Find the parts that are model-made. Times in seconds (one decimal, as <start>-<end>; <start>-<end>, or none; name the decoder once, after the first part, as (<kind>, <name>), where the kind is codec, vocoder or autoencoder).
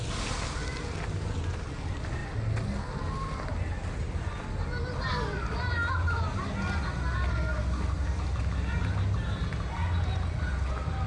none